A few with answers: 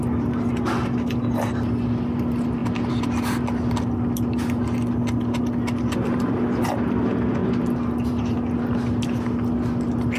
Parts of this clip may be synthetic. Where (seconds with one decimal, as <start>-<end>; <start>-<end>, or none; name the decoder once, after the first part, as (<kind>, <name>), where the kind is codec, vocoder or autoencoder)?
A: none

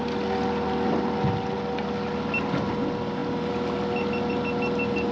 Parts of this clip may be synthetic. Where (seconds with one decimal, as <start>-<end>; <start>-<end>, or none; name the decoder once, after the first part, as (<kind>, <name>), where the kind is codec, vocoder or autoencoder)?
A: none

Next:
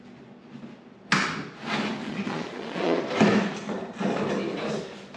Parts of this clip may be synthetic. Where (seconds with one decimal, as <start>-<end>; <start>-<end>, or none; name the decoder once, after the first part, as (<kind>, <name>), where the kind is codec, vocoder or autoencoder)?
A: 2.0-3.0 (vocoder, Vocos)